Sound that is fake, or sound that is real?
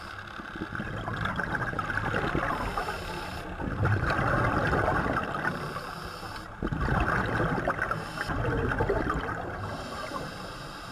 real